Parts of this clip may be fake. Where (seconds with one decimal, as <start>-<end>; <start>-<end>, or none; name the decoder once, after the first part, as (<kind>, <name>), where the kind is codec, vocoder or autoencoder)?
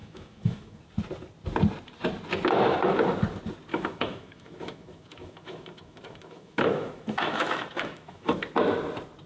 0.0-0.8 (autoencoder, DAC-VAE); 3.7-8.4